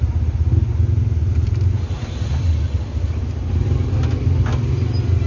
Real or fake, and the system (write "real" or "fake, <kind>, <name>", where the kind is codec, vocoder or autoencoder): real